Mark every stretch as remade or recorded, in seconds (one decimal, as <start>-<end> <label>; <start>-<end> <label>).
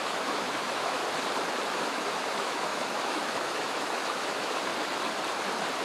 0.0-1.0 remade; 1.0-1.8 recorded; 1.8-4.7 remade; 4.7-5.8 recorded